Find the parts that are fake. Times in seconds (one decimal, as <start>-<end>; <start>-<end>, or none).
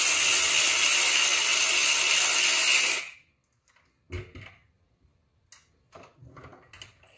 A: none